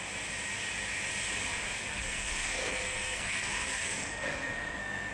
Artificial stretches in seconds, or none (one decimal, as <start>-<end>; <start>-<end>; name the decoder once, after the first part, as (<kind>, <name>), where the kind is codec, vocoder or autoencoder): 1.8-5.1 (codec, SNAC)